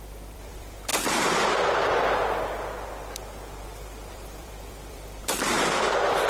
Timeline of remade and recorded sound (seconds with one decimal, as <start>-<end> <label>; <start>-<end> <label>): 0.0-0.9 remade; 0.9-3.6 recorded; 3.6-6.3 remade